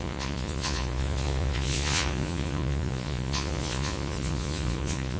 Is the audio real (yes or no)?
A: no